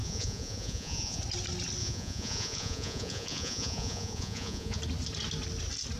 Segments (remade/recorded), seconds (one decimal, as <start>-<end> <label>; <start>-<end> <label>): 0.0-1.2 remade; 1.2-1.8 recorded; 1.8-4.8 remade; 4.8-6.0 recorded